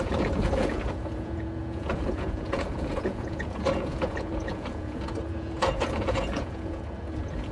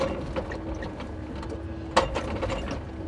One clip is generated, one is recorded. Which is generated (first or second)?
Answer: first